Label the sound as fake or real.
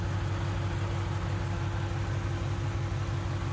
real